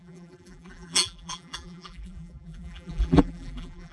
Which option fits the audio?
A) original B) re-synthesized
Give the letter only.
B